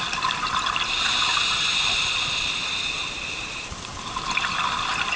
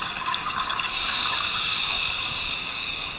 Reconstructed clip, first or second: second